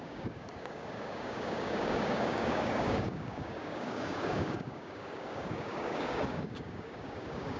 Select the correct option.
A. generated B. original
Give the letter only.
A